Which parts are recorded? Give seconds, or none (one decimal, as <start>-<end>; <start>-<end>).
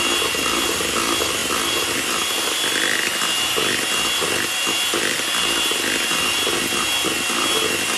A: 0.0-8.0